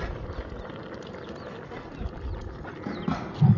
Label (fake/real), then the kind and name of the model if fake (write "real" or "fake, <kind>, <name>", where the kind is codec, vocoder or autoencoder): real